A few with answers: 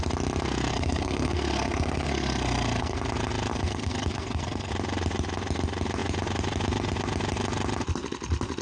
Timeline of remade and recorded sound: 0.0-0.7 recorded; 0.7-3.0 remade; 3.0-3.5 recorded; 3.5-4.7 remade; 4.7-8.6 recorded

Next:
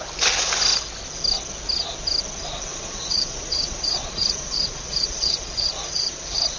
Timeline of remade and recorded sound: 0.0-2.7 recorded; 2.7-6.6 remade